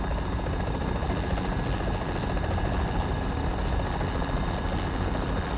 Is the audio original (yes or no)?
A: yes